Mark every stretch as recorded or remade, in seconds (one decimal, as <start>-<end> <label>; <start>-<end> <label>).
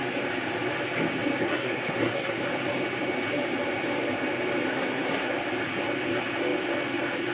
0.0-1.4 recorded; 1.4-2.4 remade; 2.4-4.7 recorded; 4.7-5.3 remade; 5.3-7.3 recorded